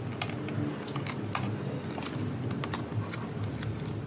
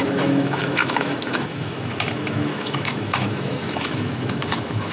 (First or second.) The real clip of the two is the first